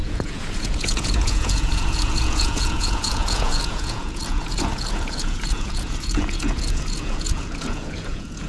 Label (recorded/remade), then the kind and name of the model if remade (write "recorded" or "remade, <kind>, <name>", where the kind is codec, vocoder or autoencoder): remade, vocoder, Vocos